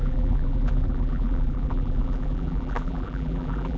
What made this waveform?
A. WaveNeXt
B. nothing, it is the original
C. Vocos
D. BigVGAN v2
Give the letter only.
D